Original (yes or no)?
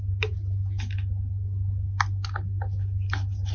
yes